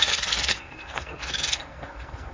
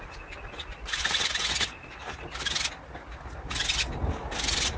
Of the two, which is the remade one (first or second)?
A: first